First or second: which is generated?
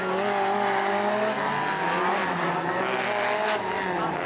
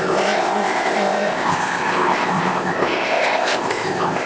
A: second